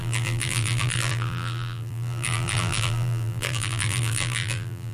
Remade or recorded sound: remade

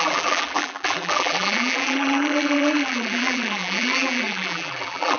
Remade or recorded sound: remade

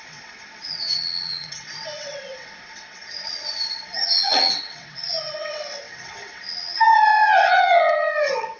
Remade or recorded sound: remade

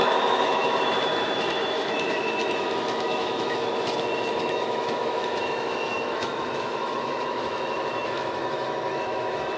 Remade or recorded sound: remade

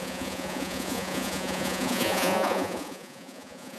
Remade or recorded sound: remade